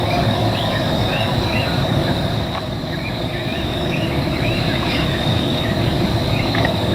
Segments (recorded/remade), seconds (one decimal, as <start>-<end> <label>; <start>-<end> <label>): 0.0-6.9 remade